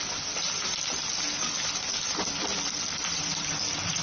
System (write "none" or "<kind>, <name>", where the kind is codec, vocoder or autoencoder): none